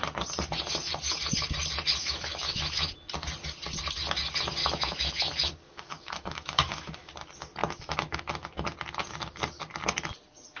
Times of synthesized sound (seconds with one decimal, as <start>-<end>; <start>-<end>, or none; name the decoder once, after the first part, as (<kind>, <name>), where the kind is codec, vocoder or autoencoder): 2.0-2.9 (autoencoder, DAC-VAE); 4.6-7.1; 7.6-8.2